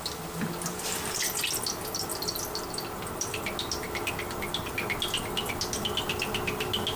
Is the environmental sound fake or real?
real